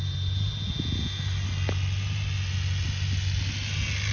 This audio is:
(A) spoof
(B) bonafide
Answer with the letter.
B